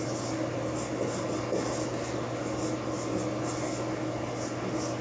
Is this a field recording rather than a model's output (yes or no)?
yes